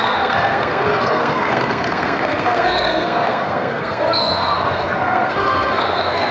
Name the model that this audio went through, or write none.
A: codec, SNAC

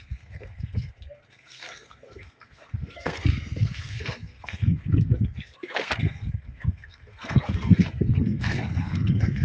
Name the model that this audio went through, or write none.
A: codec, SNAC